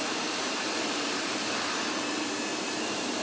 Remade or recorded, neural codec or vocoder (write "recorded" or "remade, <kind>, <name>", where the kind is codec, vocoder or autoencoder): remade, vocoder, BigVGAN v2